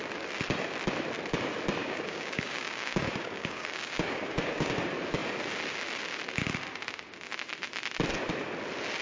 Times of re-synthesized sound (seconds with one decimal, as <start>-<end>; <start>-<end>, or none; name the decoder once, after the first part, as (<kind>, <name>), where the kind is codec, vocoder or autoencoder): 1.8-4.8 (codec, DAC)